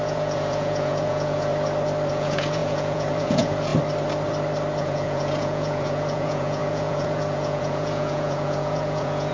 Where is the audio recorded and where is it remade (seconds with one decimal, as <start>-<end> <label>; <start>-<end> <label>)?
0.0-1.5 remade; 1.5-2.1 recorded; 2.1-3.7 remade; 3.7-4.8 recorded; 4.8-9.3 remade